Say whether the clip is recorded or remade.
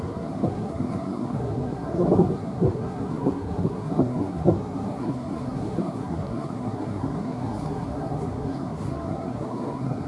remade